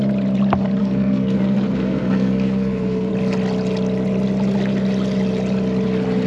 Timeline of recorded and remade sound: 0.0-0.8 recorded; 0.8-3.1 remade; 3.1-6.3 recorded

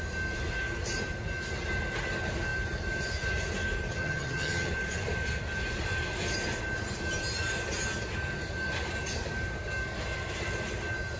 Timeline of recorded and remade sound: 0.0-3.9 recorded; 3.9-4.7 remade; 4.7-11.2 recorded

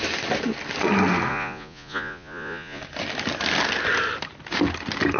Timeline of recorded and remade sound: 0.0-1.3 recorded; 1.3-2.8 remade; 2.8-5.2 recorded

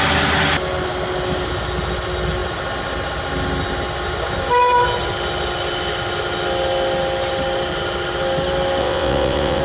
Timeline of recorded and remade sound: 0.0-8.8 recorded; 8.8-9.6 remade

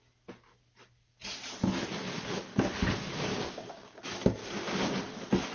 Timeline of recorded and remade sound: 0.0-3.3 recorded; 3.3-4.0 remade; 4.0-4.4 recorded; 4.4-5.0 remade; 5.0-5.5 recorded

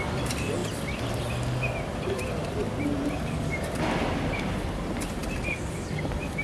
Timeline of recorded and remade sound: 0.0-6.4 recorded